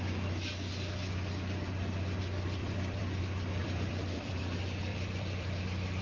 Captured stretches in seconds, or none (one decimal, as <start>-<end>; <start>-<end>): 0.0-2.6; 3.2-3.6; 4.4-4.9; 5.6-6.0